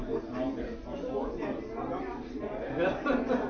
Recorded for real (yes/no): yes